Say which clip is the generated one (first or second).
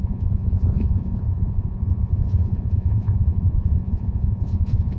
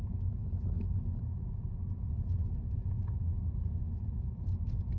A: first